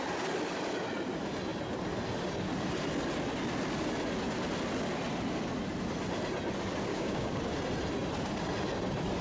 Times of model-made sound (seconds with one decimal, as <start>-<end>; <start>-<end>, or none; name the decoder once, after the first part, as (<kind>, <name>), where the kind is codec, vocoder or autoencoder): 6.9-7.4 (codec, DAC)